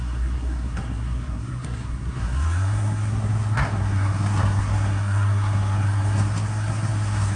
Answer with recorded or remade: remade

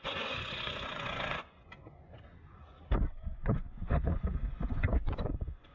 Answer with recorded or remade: remade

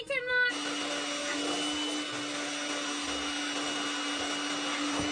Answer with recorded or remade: recorded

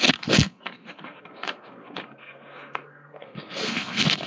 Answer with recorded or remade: remade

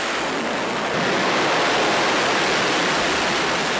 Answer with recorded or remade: recorded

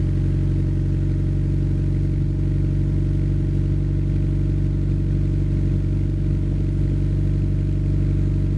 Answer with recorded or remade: recorded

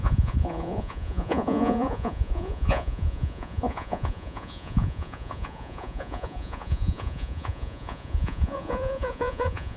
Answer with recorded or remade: remade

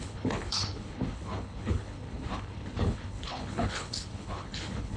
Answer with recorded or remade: remade